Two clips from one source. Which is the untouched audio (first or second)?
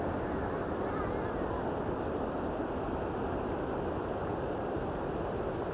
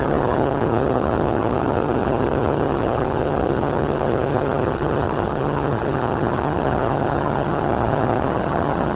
first